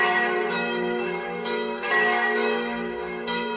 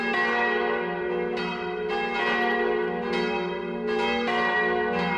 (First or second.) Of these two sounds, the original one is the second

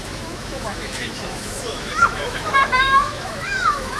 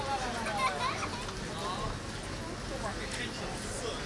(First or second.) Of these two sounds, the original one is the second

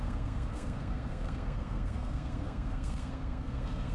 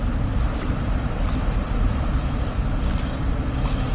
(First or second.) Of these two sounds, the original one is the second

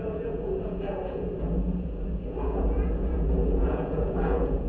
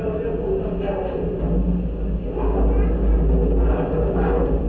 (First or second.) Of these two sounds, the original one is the second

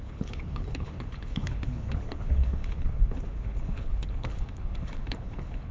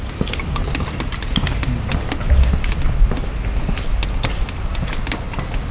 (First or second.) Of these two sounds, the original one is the second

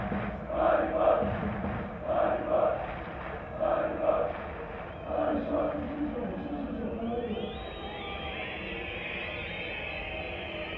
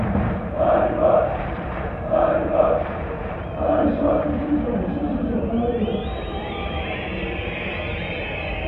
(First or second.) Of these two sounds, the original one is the first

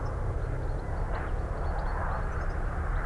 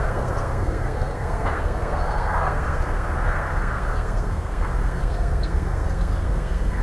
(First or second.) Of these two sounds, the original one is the first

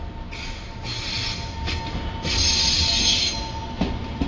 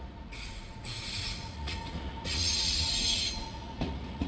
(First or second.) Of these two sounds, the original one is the first